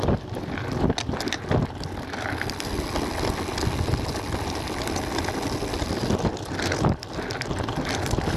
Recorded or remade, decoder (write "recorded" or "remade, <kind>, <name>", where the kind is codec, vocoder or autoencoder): recorded